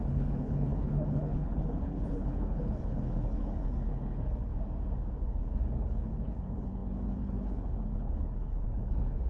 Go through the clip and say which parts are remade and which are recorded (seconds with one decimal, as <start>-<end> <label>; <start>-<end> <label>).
0.0-4.5 remade; 4.5-5.2 recorded; 5.2-9.3 remade